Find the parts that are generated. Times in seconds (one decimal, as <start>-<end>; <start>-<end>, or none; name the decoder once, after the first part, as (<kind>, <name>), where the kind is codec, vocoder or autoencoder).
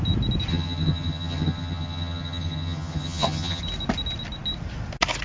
0.5-3.6 (vocoder, HiFi-GAN)